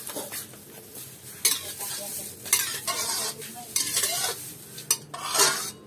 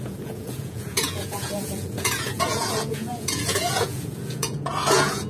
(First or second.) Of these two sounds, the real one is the first